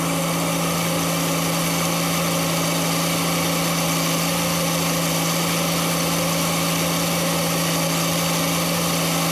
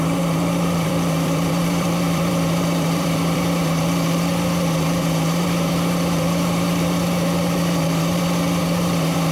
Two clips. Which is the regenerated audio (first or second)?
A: second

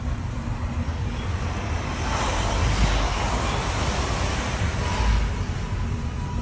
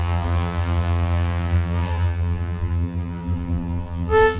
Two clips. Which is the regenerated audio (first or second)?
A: second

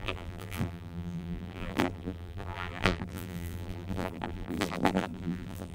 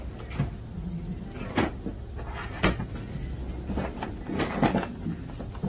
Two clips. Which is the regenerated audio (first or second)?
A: first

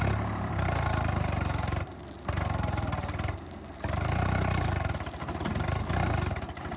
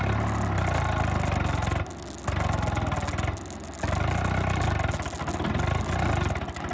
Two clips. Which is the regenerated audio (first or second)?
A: first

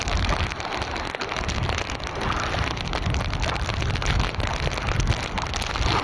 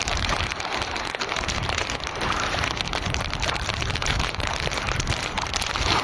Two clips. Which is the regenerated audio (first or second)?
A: second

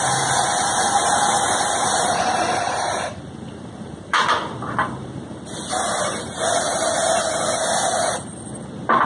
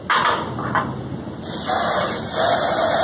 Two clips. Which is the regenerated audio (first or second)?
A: first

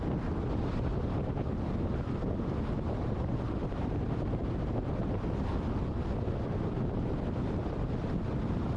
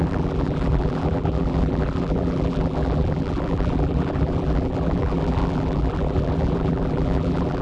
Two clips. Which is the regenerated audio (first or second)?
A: second